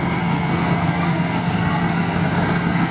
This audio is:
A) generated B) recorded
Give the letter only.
A